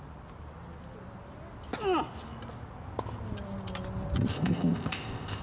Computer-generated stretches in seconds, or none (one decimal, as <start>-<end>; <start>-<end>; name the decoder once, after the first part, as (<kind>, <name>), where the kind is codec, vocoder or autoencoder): 4.3-5.4 (codec, ZipCodec)